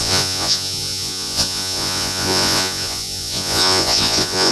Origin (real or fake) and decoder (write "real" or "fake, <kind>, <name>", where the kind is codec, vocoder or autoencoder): fake, vocoder, Vocos